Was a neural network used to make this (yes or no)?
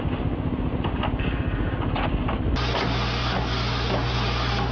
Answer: no